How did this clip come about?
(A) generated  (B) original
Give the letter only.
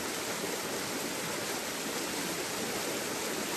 B